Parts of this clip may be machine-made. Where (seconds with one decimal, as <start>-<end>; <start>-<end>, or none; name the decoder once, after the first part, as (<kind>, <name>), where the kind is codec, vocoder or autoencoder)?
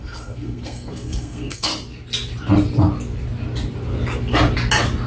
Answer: 0.0-1.7 (codec, SNAC)